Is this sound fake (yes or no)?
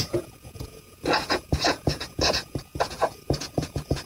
yes